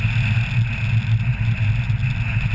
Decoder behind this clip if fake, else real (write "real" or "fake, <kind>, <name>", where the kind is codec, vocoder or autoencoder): real